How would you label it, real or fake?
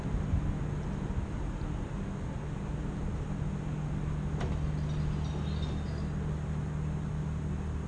real